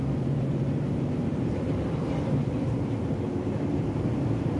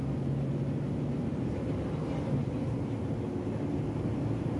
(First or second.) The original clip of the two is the second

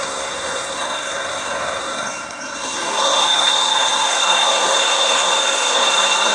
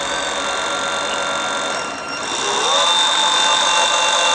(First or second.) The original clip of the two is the second